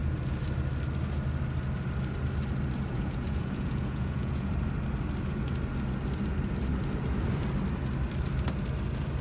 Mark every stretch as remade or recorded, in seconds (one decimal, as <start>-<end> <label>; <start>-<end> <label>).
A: 0.0-2.9 recorded; 2.9-4.5 remade; 4.5-9.2 recorded